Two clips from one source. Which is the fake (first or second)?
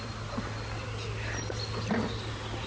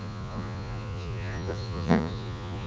second